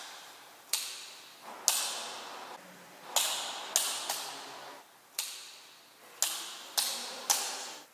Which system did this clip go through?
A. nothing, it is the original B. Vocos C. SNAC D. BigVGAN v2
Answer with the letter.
A